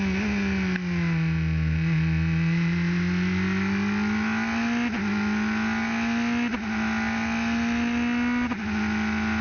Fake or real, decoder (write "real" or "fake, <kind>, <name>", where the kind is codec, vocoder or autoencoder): real